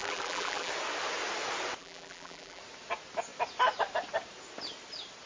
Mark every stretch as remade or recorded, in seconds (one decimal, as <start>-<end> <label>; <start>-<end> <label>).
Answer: 0.0-0.7 remade; 0.7-1.8 recorded; 1.8-2.6 remade; 2.6-5.3 recorded